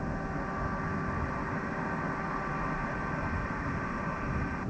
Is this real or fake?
real